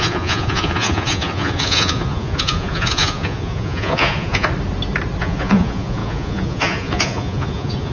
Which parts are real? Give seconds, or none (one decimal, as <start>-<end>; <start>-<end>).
4.5-5.2